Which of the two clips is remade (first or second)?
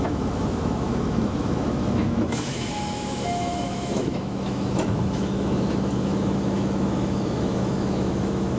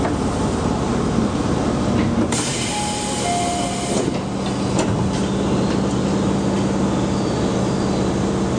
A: first